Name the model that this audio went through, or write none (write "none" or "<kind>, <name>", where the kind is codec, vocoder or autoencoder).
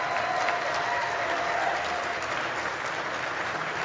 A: none